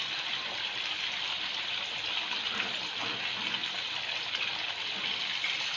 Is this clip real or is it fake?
real